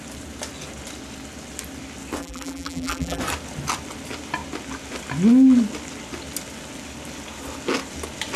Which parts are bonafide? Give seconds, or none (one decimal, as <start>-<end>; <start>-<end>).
0.0-2.2; 3.2-8.4